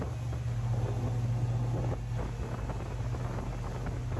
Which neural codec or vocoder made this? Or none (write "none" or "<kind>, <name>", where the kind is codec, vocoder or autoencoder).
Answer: none